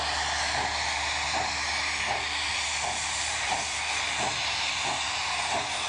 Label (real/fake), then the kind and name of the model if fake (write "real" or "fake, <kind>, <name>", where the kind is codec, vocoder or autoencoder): fake, vocoder, BigVGAN v2